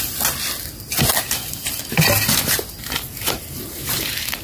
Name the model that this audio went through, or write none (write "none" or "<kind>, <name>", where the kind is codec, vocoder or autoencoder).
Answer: none